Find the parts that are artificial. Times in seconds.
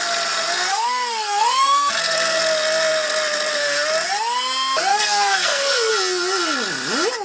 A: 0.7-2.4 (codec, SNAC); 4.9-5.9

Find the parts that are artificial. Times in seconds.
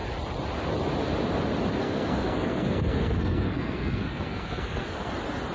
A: 1.8-5.1 (codec, SNAC)